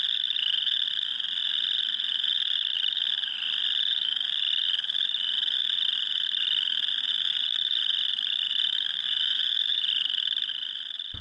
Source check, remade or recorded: recorded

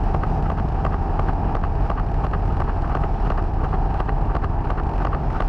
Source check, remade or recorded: recorded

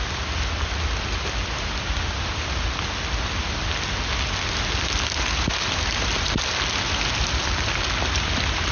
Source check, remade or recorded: recorded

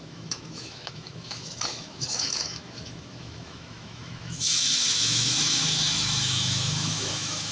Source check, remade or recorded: remade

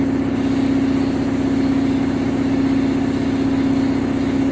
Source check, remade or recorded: recorded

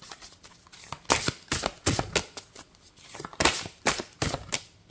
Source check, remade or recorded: recorded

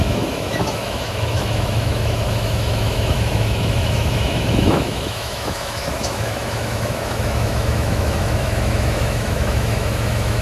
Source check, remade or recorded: remade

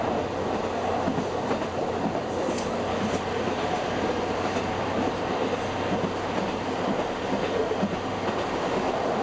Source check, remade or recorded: recorded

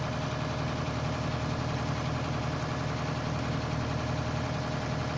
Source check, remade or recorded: recorded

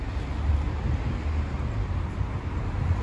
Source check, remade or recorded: recorded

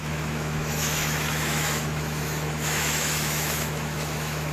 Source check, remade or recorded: remade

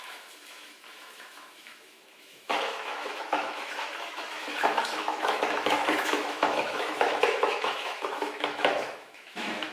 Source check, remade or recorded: remade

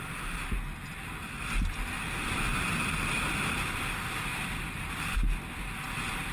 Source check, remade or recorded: recorded